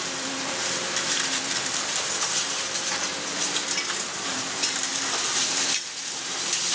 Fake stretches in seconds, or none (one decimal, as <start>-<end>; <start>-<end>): 0.0-4.9; 5.4-6.7

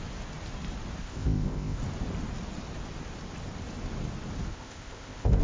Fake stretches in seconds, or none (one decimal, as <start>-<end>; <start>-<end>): 1.0-1.8; 4.5-5.4